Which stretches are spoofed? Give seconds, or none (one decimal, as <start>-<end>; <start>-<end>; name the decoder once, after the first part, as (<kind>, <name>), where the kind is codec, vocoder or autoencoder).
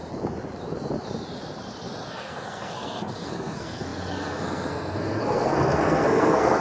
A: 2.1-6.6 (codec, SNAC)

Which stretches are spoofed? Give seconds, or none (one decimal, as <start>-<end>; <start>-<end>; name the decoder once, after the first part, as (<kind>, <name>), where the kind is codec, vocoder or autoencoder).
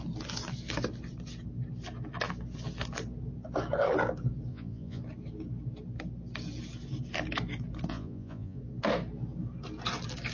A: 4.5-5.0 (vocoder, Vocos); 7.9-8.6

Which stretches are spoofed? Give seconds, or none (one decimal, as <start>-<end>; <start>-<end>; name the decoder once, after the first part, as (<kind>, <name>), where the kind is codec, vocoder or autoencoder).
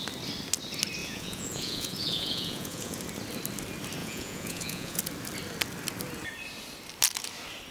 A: 1.0-3.0 (vocoder, Vocos); 4.0-5.0